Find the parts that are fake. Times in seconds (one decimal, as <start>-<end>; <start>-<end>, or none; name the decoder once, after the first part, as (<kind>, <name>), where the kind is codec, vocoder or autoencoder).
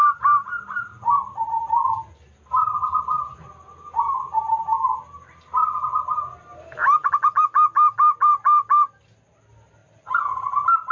none